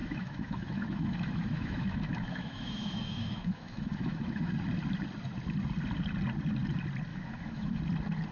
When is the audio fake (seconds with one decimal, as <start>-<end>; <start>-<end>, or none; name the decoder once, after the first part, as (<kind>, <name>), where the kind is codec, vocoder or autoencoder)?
0.0-4.5 (autoencoder, DAC-VAE); 7.1-7.8